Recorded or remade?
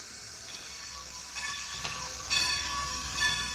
remade